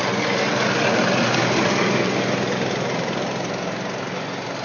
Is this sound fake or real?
real